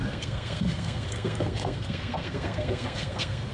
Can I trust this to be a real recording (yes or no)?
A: no